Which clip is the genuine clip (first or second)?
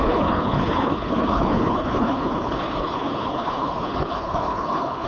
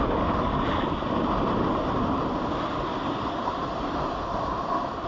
second